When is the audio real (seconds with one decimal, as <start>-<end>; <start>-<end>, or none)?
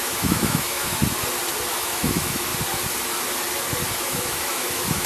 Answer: 1.0-1.7; 2.5-3.9